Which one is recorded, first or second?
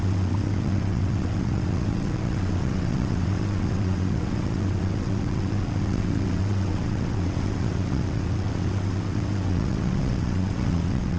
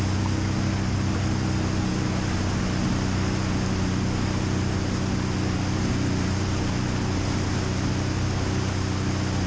second